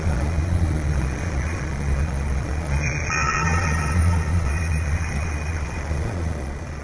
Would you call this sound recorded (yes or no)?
no